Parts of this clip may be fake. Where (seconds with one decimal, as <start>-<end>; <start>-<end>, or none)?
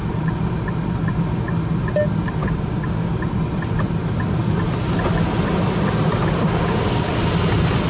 2.4-3.1; 6.4-7.1